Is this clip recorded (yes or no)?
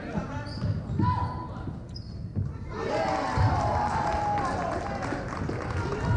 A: yes